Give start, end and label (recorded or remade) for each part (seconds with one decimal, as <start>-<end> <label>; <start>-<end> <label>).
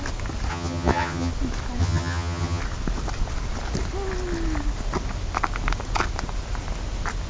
0.0-0.5 recorded; 0.5-1.3 remade; 1.3-1.8 recorded; 1.8-2.6 remade; 2.6-7.3 recorded